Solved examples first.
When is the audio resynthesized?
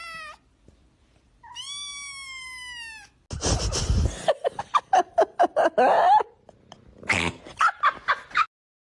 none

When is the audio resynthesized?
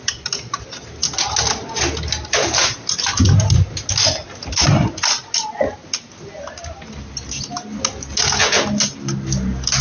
none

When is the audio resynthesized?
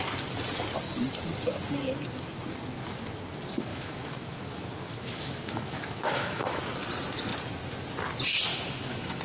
3.7-6.6 (autoencoder, DAC-VAE); 8.5-9.2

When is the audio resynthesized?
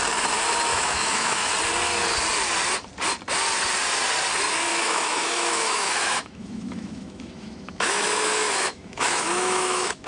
0.7-1.5 (autoencoder, DAC-VAE); 4.7-10.1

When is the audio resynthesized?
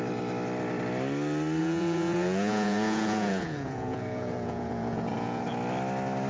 1.6-5.4 (vocoder, Vocos)